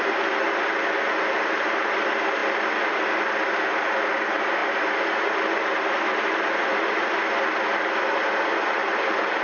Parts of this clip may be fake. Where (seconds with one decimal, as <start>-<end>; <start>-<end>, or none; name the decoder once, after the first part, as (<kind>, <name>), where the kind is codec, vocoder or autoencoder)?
none